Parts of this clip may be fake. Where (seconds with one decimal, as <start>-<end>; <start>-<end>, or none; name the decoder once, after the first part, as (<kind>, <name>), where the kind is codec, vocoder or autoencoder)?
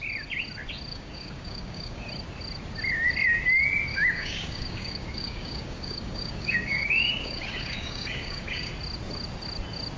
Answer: 0.9-2.1 (codec, DAC); 3.9-8.7